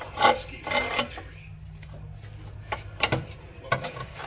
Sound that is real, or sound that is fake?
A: real